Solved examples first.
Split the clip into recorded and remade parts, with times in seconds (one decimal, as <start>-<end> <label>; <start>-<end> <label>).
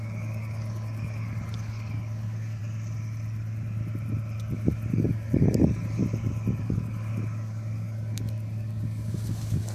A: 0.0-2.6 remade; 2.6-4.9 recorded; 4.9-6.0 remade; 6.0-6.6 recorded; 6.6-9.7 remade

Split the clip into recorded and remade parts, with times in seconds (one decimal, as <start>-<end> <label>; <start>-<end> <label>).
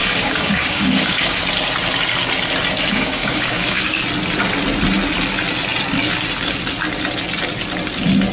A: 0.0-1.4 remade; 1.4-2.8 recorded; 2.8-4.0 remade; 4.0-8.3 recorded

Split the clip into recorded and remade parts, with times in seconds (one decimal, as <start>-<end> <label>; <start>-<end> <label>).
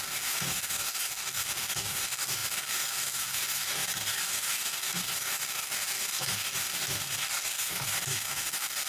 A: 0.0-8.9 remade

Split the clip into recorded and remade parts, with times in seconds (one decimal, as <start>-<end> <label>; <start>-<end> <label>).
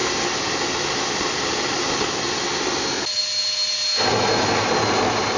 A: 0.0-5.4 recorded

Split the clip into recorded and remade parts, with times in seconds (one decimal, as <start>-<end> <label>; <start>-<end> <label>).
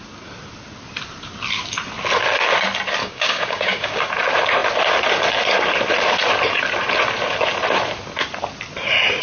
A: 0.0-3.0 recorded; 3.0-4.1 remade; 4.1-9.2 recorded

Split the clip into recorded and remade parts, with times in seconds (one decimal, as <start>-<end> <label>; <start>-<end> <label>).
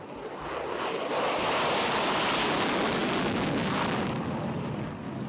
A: 0.0-5.3 recorded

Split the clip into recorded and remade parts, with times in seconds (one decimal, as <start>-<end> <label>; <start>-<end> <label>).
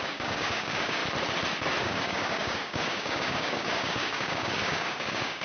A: 0.0-1.0 remade; 1.0-1.8 recorded; 1.8-5.4 remade